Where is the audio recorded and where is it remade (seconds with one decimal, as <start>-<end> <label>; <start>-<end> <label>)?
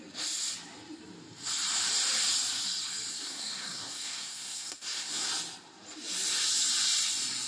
0.0-3.1 recorded; 3.1-5.3 remade; 5.3-7.5 recorded